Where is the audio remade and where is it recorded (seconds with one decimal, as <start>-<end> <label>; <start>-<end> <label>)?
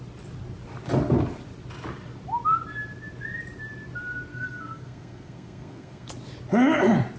0.0-4.3 recorded; 4.3-6.1 remade; 6.1-7.2 recorded